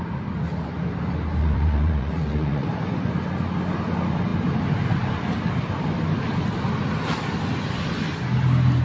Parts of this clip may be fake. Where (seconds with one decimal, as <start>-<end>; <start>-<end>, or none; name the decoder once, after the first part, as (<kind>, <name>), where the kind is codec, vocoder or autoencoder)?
1.4-3.1 (vocoder, Vocos)